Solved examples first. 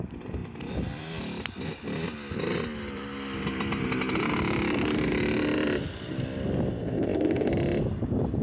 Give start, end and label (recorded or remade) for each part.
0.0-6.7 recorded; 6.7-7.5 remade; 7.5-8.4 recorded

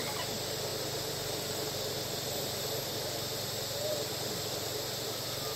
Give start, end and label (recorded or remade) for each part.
0.0-5.6 recorded

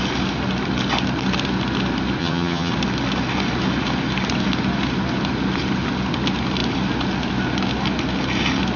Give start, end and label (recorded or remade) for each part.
0.0-2.2 recorded; 2.2-2.7 remade; 2.7-8.8 recorded

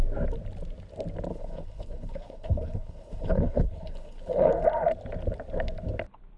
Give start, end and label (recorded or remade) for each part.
0.0-1.3 recorded; 1.3-4.5 remade; 4.5-6.4 recorded

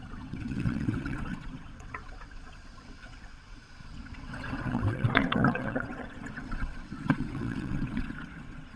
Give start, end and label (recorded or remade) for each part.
0.0-8.8 remade